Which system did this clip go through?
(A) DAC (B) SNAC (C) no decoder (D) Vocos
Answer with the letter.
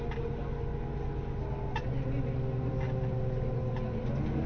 C